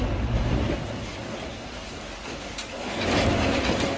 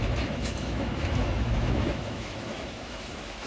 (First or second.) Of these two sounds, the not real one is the second